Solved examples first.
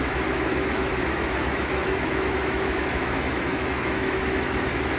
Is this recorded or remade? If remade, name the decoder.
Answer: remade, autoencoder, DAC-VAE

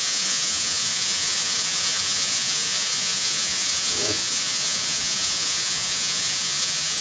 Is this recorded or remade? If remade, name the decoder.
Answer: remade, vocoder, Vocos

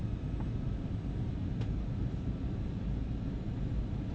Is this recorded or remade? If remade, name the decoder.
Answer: recorded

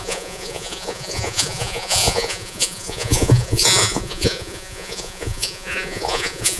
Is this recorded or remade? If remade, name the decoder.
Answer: remade, vocoder, Vocos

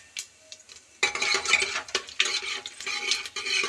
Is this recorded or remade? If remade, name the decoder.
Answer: recorded